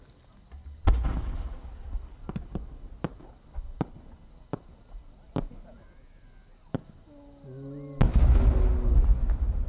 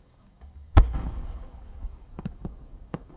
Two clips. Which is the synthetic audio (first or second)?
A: second